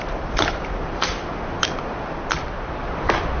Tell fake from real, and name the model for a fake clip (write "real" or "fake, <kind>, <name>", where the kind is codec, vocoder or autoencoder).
fake, vocoder, BigVGAN v2